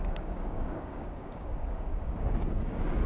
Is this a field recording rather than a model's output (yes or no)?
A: no